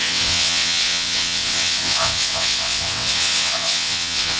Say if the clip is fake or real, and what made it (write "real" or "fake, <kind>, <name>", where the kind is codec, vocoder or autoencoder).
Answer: fake, vocoder, WaveNeXt